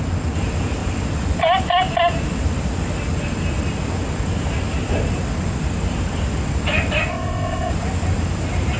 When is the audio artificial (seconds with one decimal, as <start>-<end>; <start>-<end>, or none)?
7.1-7.7